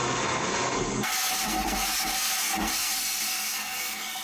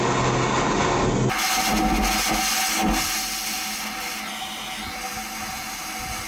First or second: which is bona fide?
second